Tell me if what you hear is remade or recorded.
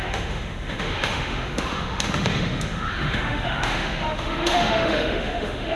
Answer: remade